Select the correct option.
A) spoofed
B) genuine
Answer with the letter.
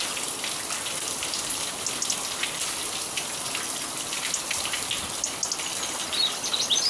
B